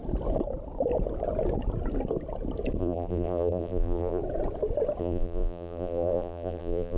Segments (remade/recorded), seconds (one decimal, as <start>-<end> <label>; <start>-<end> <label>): 0.0-2.8 recorded; 2.8-4.2 remade; 4.2-5.0 recorded; 5.0-7.0 remade